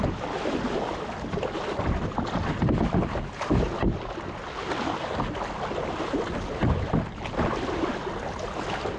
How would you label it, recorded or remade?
recorded